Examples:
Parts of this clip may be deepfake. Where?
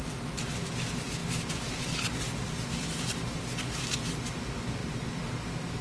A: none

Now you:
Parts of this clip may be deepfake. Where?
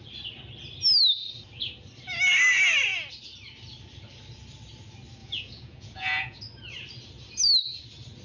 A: 5.2-6.4 (vocoder, Vocos)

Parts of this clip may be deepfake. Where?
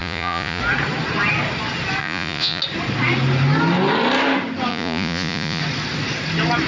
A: 0.0-0.6 (vocoder, Vocos); 2.0-2.6; 4.7-5.6